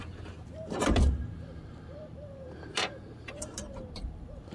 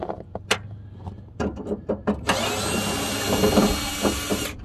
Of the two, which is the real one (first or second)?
second